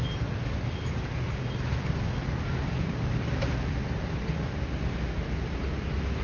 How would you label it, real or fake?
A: real